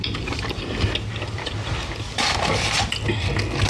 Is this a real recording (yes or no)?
yes